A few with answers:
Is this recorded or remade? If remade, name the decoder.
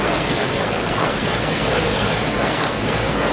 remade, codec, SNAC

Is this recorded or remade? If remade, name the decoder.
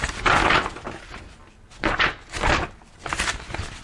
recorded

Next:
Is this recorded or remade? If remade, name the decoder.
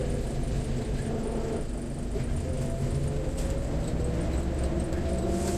recorded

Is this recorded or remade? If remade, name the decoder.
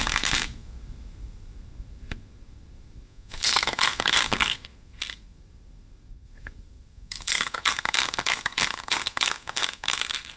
remade, codec, SNAC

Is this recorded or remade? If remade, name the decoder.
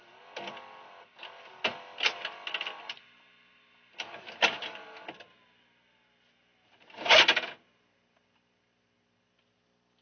recorded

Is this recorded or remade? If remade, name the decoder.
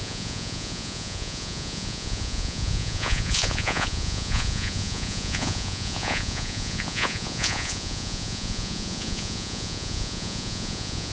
remade, vocoder, Vocos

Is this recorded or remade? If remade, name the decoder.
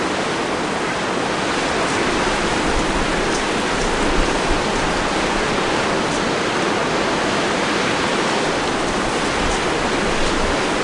recorded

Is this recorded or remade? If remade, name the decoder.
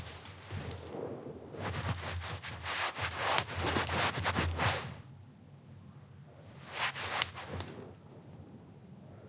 recorded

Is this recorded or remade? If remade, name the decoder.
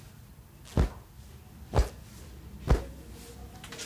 recorded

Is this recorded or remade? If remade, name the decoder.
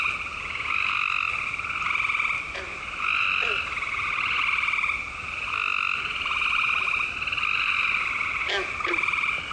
recorded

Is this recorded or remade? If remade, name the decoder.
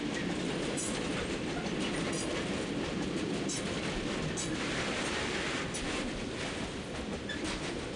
recorded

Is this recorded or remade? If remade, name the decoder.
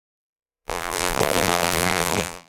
remade, vocoder, BigVGAN v2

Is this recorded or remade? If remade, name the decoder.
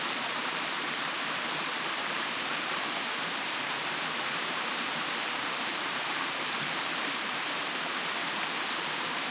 remade, vocoder, BigVGAN v2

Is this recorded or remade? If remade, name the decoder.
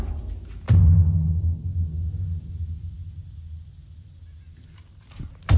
recorded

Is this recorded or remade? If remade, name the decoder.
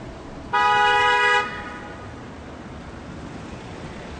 recorded